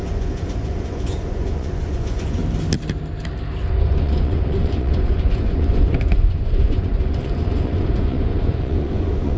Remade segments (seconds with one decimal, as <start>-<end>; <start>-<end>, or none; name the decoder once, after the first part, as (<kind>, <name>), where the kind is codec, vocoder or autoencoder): 0.0-2.4 (vocoder, Vocos); 3.8-9.4